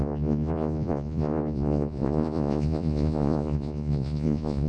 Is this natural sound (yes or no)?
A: no